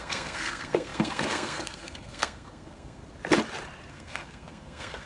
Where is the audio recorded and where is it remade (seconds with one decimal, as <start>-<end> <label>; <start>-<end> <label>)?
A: 0.0-3.0 remade; 3.0-3.9 recorded; 3.9-5.1 remade